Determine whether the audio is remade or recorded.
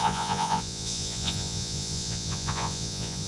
remade